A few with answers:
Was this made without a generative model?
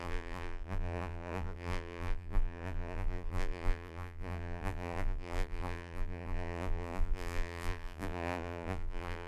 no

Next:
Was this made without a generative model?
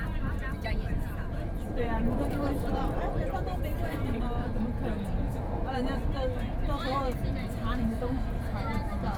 no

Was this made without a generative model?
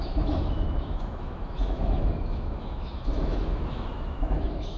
no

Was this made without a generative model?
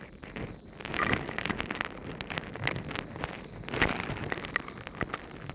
yes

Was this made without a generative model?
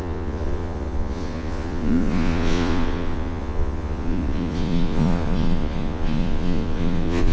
no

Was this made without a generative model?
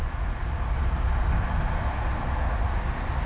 yes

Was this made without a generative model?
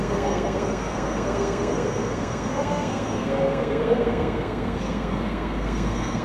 no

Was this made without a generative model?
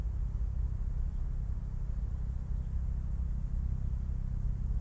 yes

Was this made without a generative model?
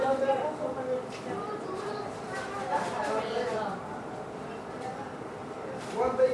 no